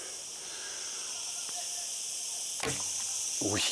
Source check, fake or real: real